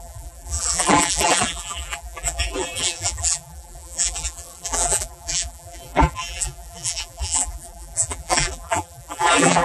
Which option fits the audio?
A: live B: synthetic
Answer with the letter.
B